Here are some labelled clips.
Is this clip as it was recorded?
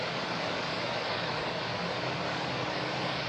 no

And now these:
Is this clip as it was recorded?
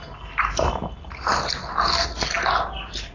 yes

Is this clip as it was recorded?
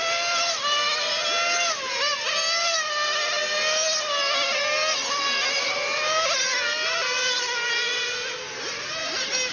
yes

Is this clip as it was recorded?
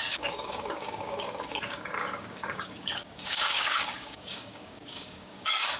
no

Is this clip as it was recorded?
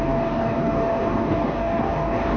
no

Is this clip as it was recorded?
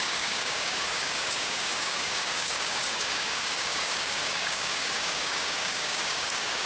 no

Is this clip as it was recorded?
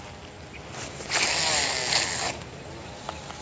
yes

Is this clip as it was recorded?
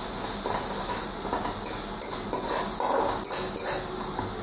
yes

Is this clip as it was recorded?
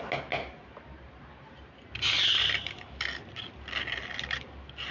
yes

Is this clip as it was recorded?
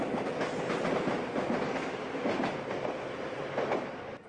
yes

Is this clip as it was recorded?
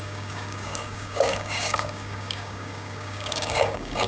no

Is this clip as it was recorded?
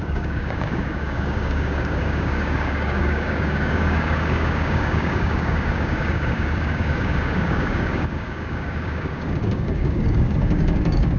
no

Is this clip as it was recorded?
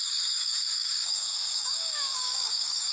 no